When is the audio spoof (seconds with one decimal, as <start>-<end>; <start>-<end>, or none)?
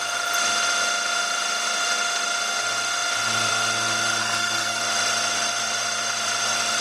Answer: 4.2-4.8